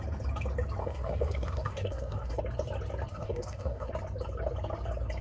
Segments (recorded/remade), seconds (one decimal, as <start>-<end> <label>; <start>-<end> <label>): 0.0-0.8 recorded; 0.8-2.4 remade; 2.4-3.1 recorded; 3.1-3.9 remade; 3.9-5.2 recorded